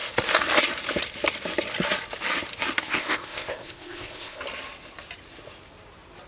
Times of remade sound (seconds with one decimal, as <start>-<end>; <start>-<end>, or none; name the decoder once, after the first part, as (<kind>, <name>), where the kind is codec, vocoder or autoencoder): 2.8-4.4 (codec, ZipCodec)